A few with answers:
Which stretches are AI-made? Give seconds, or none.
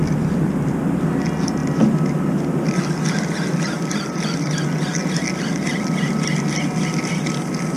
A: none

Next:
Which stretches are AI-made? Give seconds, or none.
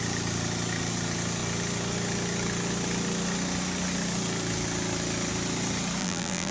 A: 6.0-6.5 (vocoder, BigVGAN v2)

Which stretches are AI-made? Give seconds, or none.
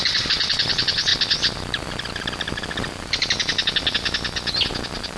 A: none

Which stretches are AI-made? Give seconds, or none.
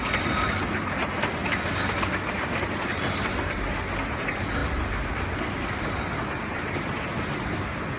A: none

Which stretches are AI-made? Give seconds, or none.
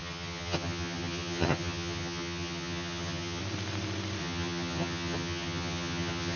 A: 0.0-3.4 (vocoder, HiFi-GAN); 4.2-6.4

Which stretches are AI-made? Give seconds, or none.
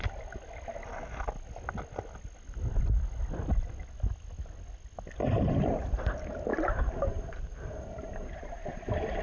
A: 5.2-6.0 (vocoder, BigVGAN v2); 6.5-9.2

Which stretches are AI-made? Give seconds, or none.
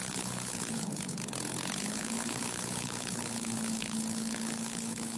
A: 0.0-1.2 (codec, HILCodec); 1.7-5.2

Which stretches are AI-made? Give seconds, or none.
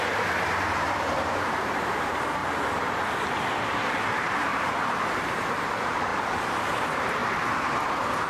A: 0.0-2.4 (vocoder, BigVGAN v2); 3.5-4.5; 5.4-7.2; 7.9-8.3